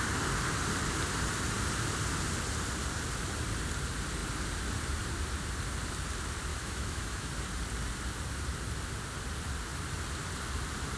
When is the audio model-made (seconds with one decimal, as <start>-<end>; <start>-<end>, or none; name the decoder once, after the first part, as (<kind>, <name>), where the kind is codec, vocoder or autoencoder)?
6.5-7.3 (autoencoder, DAC-VAE)